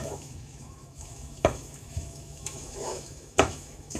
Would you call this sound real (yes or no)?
no